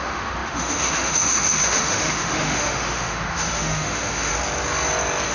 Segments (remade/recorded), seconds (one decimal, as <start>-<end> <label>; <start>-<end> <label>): 0.0-4.3 remade; 4.3-5.3 recorded